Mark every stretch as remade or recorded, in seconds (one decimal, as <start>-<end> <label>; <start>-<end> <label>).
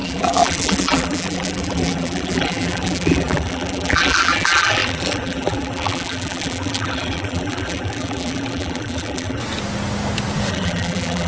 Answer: 0.0-9.4 remade; 9.4-10.5 recorded; 10.5-11.3 remade